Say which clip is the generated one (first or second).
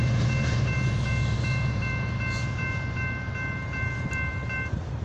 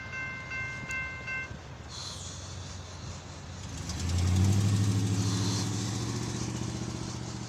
first